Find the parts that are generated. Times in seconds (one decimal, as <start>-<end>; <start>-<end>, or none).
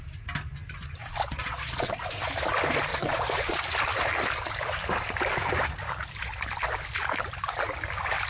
1.0-1.9; 2.9-3.6